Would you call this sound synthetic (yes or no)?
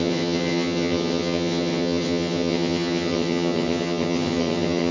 yes